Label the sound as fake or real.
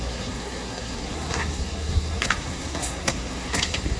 fake